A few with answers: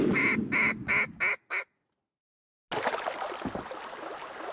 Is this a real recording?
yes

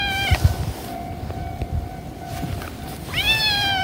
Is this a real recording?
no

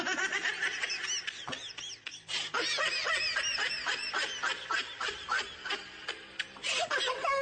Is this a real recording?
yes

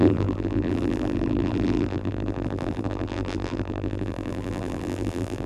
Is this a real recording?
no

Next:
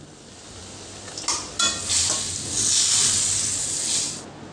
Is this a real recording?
yes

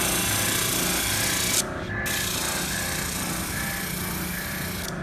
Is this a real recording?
yes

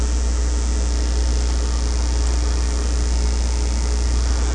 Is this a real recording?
yes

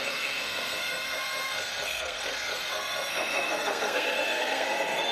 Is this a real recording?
no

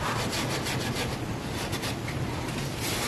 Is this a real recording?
yes